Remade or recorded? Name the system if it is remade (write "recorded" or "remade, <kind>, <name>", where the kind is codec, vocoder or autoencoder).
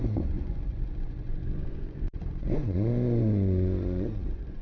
remade, vocoder, Vocos